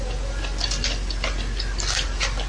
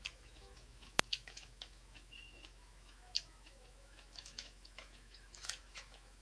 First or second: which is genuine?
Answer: first